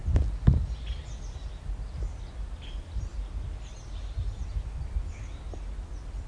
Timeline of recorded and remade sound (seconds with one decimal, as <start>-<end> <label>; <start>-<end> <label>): 0.0-6.3 recorded